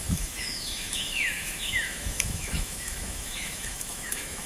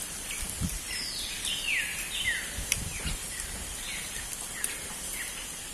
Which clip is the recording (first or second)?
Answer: second